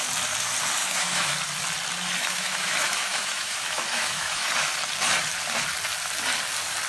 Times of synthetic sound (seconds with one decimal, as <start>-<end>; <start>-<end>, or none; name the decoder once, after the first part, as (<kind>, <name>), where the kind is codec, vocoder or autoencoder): 0.8-1.3 (autoencoder, DAC-VAE); 2.2-4.5